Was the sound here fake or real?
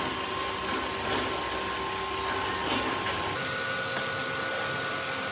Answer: real